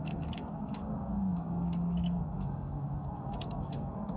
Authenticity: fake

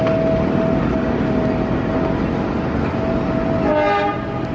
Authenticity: real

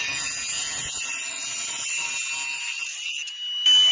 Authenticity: real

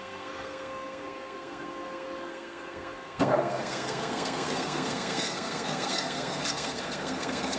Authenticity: fake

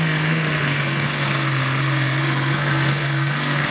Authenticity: fake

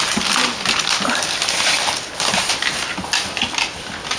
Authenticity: real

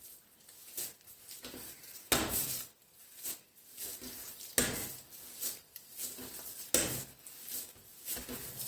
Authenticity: real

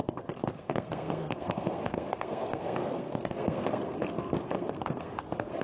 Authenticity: fake